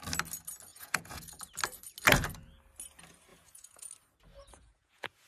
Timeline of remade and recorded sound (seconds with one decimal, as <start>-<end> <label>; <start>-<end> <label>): 0.0-0.7 recorded; 0.7-1.4 remade; 1.4-3.3 recorded; 3.3-3.9 remade; 3.9-4.3 recorded; 4.3-5.3 remade